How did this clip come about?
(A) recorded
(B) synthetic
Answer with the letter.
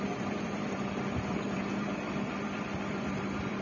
B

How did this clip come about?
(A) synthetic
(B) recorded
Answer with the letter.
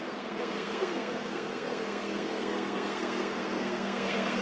A